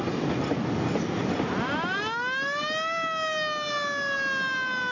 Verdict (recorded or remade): recorded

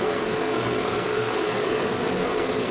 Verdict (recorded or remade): remade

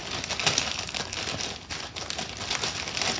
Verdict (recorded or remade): recorded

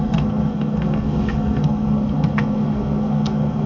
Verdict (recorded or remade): remade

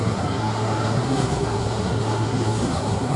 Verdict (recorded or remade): remade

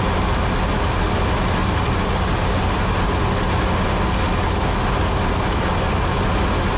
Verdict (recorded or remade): recorded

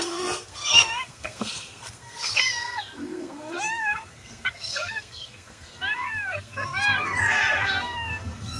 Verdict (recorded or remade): remade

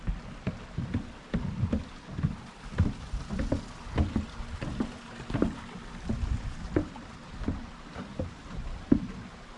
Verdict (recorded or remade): recorded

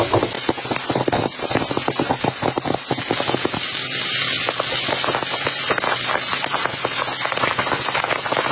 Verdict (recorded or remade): recorded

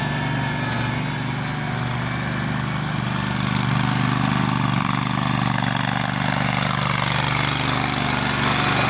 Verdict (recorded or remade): recorded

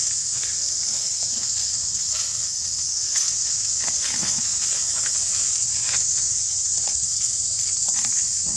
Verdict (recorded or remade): remade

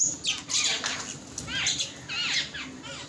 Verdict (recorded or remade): recorded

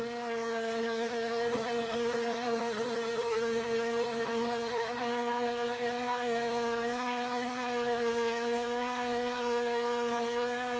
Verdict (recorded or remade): remade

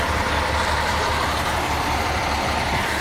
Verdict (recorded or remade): recorded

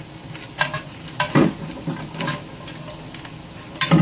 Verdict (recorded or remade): recorded